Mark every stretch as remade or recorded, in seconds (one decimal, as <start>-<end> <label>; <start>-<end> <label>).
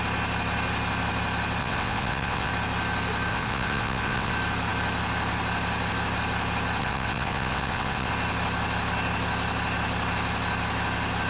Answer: 0.0-1.6 recorded; 1.6-2.5 remade; 2.5-3.3 recorded; 3.3-4.3 remade; 4.3-6.8 recorded; 6.8-8.1 remade; 8.1-11.3 recorded